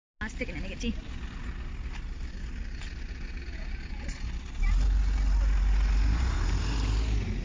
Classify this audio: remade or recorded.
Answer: recorded